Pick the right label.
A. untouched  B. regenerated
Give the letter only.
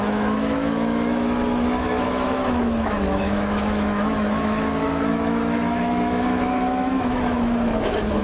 B